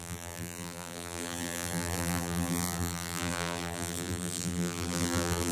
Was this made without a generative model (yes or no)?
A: no